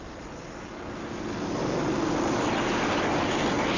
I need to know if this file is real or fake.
real